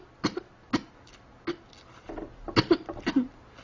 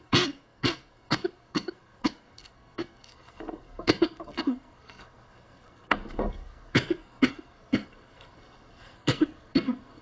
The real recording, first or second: first